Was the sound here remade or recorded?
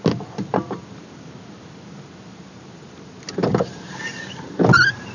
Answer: recorded